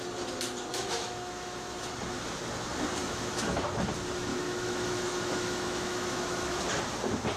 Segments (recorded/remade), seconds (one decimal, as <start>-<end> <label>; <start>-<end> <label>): 0.0-0.7 recorded; 0.7-1.9 remade; 1.9-3.0 recorded; 3.0-3.6 remade; 3.6-4.3 recorded; 4.3-6.6 remade; 6.6-7.4 recorded